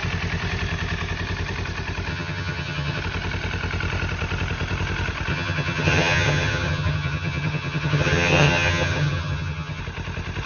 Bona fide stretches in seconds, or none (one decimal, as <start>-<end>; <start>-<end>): 0.0-2.1; 3.0-5.3; 9.8-10.5